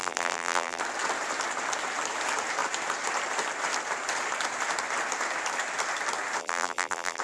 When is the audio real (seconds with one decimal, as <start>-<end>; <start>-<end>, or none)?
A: 0.8-6.4